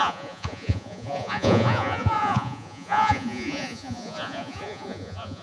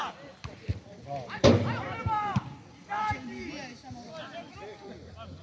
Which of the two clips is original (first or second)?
second